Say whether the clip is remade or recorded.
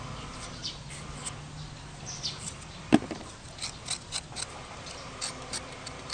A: recorded